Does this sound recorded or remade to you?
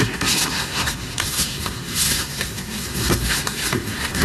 remade